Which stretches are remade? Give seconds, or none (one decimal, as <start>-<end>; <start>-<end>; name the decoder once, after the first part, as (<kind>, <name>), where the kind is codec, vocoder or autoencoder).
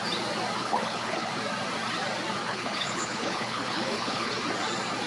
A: 0.6-1.3 (codec, HILCodec); 2.4-4.3